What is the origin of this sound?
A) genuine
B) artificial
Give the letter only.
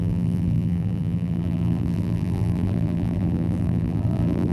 B